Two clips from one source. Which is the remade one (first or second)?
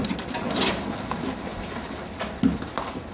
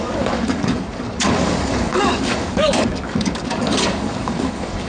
second